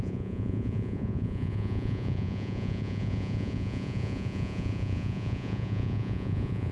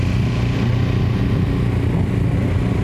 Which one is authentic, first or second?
second